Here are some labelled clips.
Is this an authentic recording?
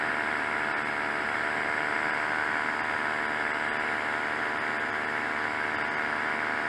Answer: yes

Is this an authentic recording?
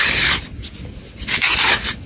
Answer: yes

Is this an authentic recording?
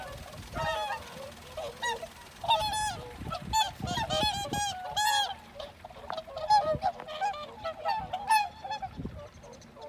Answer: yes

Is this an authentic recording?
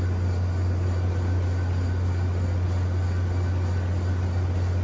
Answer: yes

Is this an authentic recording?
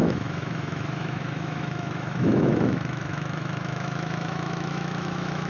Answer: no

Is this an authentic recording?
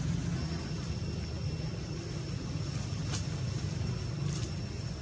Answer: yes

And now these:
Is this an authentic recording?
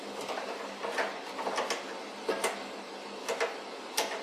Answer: yes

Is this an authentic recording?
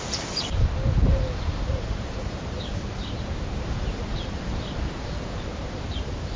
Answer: no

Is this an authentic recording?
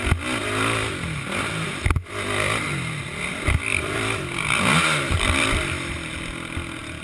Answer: yes